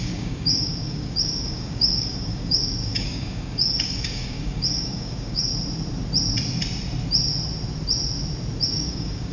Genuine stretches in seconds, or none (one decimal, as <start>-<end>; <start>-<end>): 5.5-8.6